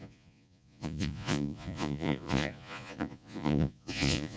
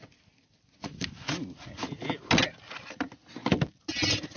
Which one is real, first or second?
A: second